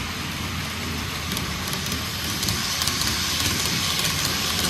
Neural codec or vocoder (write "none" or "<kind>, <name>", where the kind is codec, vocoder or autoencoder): vocoder, BigVGAN v2